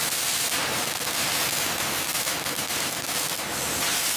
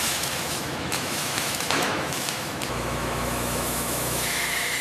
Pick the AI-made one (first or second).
second